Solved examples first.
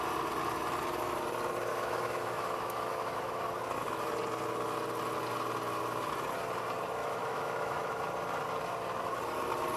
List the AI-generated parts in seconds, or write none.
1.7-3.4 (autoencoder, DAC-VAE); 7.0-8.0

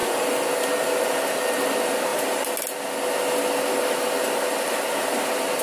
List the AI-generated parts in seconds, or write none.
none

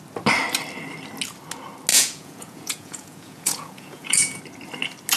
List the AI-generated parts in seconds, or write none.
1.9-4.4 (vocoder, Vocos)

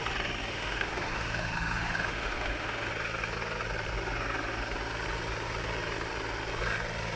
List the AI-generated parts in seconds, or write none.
0.5-2.9 (autoencoder, DAC-VAE)

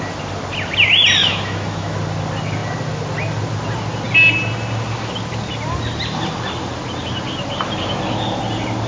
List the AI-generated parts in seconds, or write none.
1.2-2.0 (autoencoder, DAC-VAE)

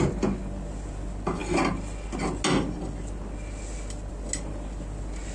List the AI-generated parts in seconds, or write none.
none